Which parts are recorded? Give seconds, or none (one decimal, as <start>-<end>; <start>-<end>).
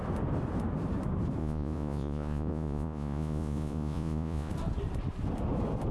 0.0-1.4; 4.5-5.9